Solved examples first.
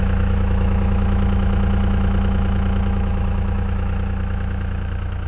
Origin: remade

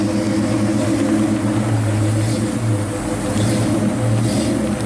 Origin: recorded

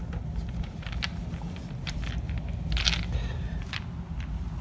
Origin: recorded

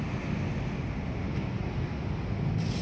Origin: recorded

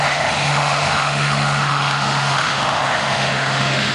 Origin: remade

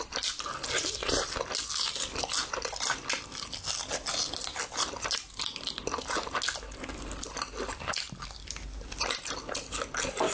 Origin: recorded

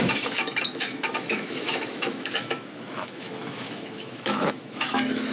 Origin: remade